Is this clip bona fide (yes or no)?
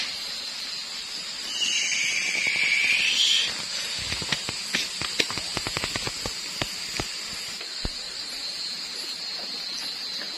yes